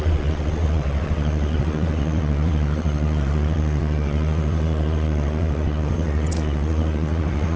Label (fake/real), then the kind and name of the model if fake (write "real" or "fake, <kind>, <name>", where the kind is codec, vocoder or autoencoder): fake, vocoder, WaveNeXt